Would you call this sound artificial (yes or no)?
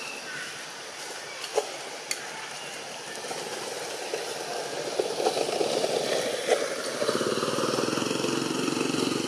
no